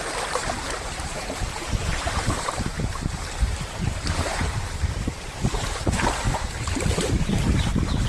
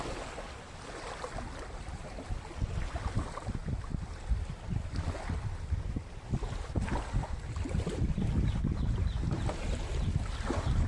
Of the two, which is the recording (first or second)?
second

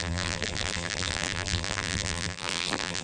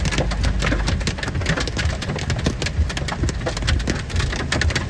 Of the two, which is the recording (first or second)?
second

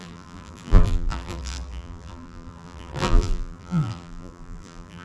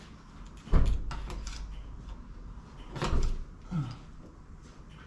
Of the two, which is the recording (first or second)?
second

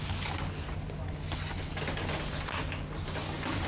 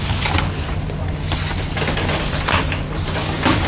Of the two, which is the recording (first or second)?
first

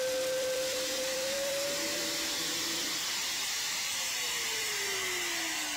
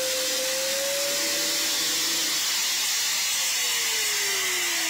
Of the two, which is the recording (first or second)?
second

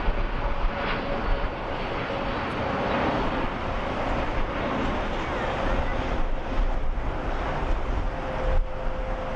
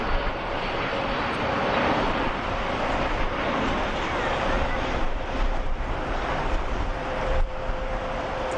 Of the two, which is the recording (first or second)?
first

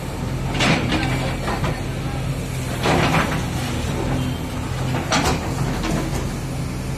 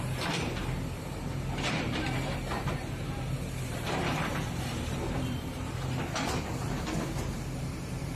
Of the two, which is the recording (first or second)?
first